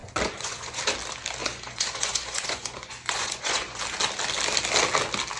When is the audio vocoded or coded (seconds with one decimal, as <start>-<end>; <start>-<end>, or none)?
0.0-0.8; 1.4-3.8